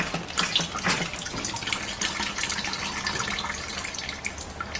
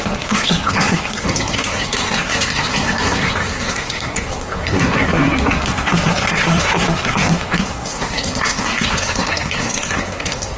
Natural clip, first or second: first